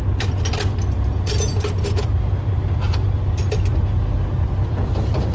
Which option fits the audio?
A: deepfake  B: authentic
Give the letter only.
B